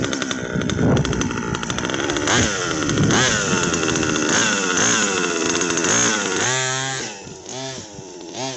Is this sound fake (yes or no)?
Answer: no